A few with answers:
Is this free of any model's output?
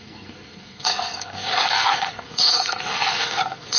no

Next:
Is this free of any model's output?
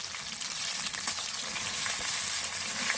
yes